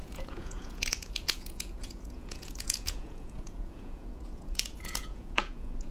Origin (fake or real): fake